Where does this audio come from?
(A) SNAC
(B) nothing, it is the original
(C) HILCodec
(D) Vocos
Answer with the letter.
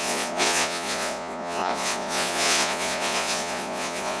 D